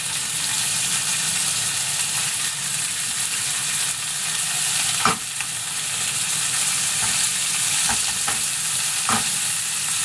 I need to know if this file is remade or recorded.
recorded